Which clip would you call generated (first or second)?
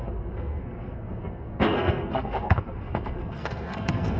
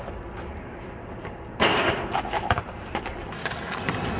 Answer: first